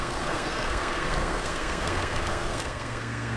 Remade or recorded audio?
remade